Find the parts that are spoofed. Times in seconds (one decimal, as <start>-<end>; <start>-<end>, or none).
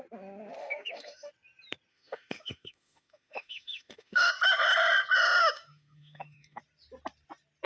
0.6-1.3; 1.9-4.3; 5.4-6.6